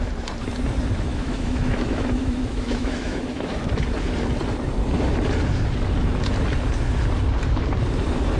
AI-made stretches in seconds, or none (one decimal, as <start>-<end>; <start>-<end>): 1.1-3.6